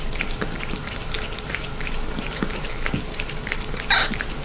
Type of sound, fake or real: real